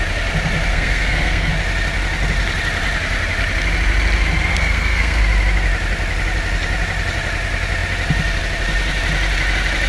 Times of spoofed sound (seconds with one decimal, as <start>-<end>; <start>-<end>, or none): 0.7-1.5; 4.5-5.2